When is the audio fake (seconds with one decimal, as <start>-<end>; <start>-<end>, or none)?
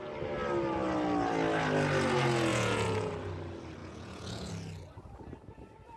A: 2.5-3.1; 3.8-4.5